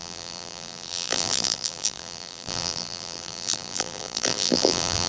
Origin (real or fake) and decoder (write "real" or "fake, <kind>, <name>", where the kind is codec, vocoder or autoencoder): fake, vocoder, BigVGAN v2